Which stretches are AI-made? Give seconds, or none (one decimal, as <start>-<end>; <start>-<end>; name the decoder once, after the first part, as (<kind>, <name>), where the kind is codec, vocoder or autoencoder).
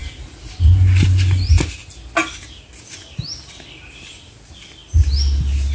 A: none